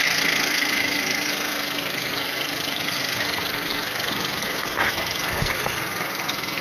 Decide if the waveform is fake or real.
fake